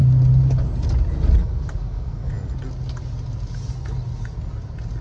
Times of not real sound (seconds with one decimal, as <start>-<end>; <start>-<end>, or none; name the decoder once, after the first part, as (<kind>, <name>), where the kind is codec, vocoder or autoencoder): 1.4-2.3 (codec, SNAC)